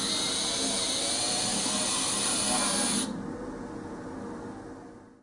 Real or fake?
real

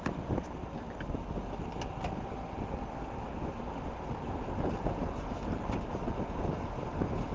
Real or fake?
real